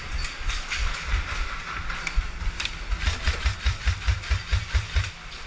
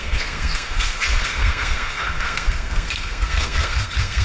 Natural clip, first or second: first